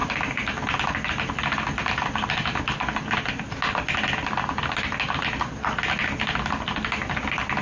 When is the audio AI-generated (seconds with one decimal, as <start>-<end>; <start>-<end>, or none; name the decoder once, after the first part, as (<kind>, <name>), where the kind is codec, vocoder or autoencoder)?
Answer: none